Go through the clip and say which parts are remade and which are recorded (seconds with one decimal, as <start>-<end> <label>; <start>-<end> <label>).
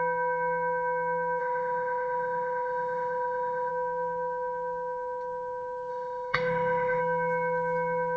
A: 0.0-1.4 recorded; 1.4-3.7 remade; 3.7-5.9 recorded; 5.9-7.0 remade; 7.0-8.2 recorded